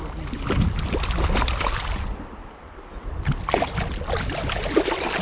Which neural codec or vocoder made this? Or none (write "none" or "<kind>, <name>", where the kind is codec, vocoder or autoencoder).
none